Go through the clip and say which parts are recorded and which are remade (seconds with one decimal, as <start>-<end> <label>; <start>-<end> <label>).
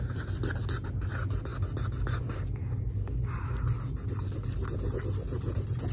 0.0-5.9 recorded